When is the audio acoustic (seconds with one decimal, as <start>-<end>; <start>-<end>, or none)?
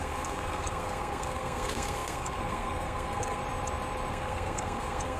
3.4-4.1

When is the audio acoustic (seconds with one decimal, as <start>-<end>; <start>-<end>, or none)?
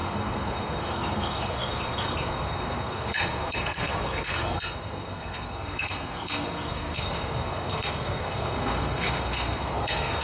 none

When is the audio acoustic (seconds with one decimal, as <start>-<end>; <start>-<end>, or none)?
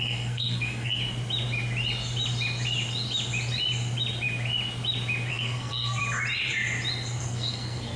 1.0-5.3; 6.0-7.2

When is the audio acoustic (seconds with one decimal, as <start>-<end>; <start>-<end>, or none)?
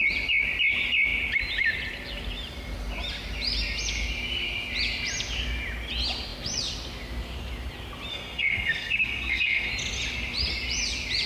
0.0-8.1; 9.7-11.3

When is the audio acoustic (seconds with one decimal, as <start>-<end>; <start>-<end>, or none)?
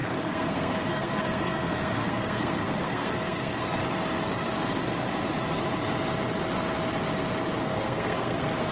3.8-7.6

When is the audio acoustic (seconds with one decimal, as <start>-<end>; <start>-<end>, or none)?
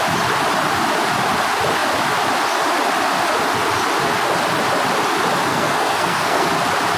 0.0-5.5; 6.5-7.0